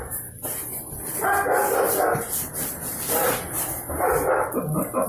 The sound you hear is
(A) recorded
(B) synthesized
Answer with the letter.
A